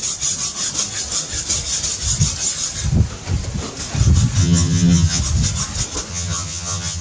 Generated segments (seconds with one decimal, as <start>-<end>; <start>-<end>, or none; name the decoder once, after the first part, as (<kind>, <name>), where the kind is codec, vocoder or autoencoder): 4.4-5.2 (vocoder, HiFi-GAN); 6.1-7.0